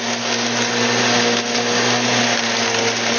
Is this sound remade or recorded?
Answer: recorded